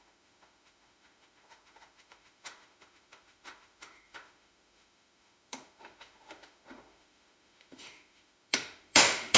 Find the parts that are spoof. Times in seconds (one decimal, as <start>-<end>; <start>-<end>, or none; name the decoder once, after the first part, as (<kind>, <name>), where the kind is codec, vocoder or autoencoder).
0.0-9.4 (autoencoder, DAC-VAE)